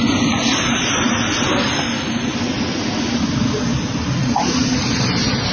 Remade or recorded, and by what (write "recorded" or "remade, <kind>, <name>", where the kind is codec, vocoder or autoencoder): recorded